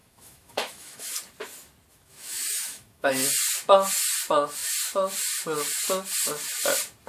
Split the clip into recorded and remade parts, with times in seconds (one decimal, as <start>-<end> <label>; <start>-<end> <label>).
0.0-1.1 remade; 1.1-1.9 recorded; 1.9-3.1 remade; 3.1-7.1 recorded

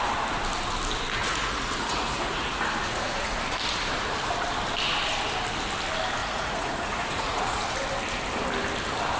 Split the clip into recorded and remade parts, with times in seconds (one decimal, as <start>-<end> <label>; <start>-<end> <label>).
0.0-1.2 recorded; 1.2-3.4 remade; 3.4-6.2 recorded; 6.2-7.6 remade; 7.6-9.2 recorded

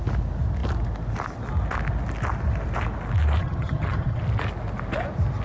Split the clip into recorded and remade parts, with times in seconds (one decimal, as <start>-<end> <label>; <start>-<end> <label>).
0.0-3.4 recorded; 3.4-4.2 remade; 4.2-5.4 recorded

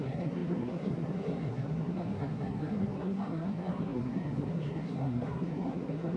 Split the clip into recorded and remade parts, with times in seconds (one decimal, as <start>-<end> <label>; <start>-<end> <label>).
0.0-6.2 remade

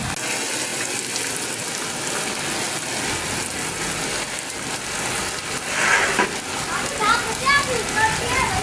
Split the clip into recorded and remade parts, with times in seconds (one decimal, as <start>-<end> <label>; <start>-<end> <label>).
0.0-8.6 recorded

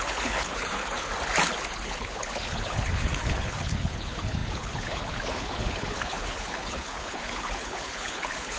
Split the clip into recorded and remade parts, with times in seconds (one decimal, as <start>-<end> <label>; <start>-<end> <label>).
0.0-1.1 remade; 1.1-1.7 recorded; 1.7-8.6 remade

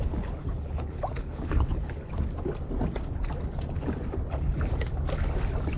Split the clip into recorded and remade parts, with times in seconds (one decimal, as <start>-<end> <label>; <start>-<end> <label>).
0.0-0.4 recorded; 0.4-2.1 remade; 2.1-5.8 recorded

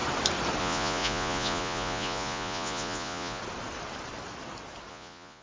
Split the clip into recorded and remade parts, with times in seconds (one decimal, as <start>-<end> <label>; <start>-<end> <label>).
0.0-0.6 recorded; 0.6-3.4 remade; 3.4-4.9 recorded; 4.9-5.4 remade